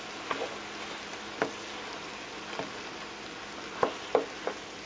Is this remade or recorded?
recorded